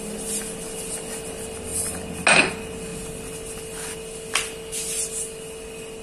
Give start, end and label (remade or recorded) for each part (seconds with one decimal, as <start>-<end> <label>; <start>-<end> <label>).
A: 0.0-6.0 recorded